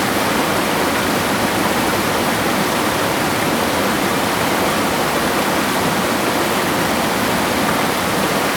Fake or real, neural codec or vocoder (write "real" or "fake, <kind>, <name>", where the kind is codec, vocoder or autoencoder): fake, vocoder, BigVGAN v2